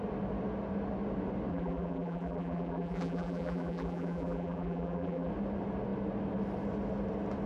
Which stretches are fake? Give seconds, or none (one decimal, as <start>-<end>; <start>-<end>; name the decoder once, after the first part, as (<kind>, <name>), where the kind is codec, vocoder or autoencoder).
1.5-5.3 (vocoder, BigVGAN v2)